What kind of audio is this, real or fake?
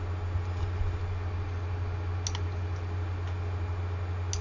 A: real